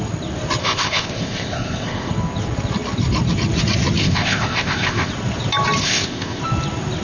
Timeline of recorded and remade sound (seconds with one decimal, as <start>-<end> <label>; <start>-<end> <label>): 0.0-0.6 recorded; 0.6-2.1 remade; 2.1-4.0 recorded; 4.0-5.1 remade; 5.1-5.8 recorded; 5.8-6.4 remade; 6.4-7.0 recorded